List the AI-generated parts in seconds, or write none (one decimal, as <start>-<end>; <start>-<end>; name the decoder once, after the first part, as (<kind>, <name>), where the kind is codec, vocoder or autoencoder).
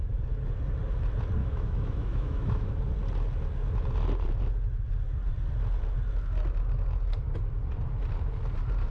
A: 1.4-2.8 (autoencoder, DAC-VAE)